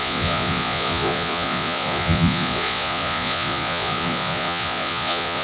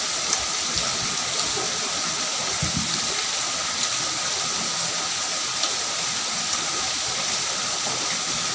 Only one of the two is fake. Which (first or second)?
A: first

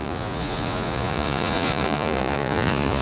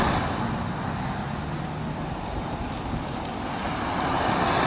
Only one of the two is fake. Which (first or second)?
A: first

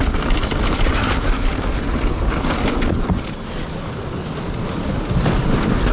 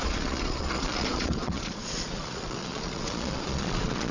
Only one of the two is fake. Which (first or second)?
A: second